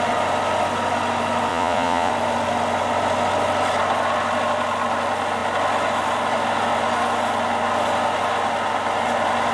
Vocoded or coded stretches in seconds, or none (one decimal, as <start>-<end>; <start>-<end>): 1.5-2.1